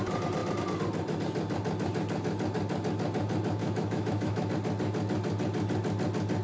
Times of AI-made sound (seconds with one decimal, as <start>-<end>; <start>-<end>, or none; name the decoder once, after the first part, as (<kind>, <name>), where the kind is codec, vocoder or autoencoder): 3.6-4.5 (autoencoder, DAC-VAE)